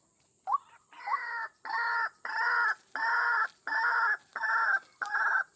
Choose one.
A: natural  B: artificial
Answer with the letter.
A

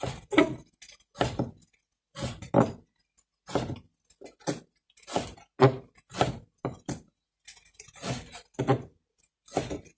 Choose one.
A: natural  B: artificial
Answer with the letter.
A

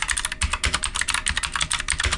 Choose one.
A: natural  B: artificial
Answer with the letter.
A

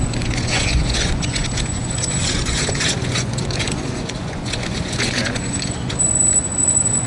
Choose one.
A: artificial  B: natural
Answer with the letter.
A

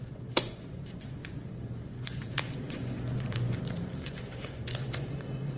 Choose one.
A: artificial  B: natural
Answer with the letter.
A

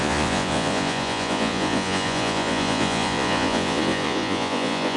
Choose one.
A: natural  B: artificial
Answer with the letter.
B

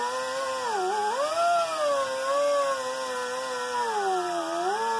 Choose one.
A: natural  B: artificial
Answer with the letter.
A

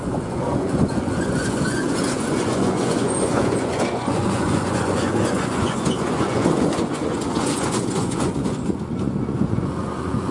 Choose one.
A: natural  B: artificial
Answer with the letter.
B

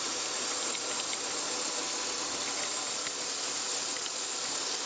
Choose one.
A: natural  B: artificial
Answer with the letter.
A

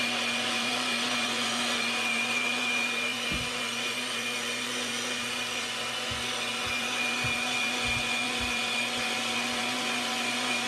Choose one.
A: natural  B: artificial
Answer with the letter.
B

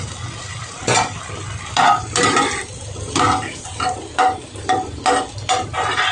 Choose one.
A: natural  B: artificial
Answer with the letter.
A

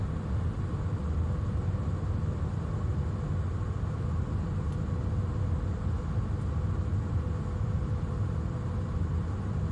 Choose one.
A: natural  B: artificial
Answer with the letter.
A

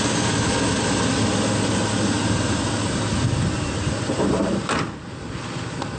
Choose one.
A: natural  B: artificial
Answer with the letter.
A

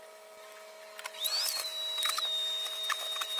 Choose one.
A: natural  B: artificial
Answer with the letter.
A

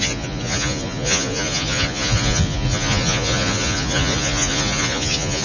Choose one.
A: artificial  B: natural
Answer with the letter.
A